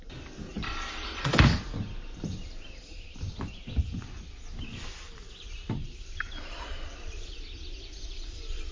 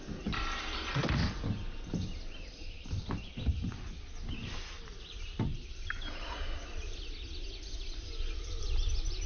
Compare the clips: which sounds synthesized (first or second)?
first